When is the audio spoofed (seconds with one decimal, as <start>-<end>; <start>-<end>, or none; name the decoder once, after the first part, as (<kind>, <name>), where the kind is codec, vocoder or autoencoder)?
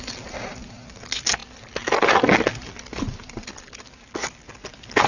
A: none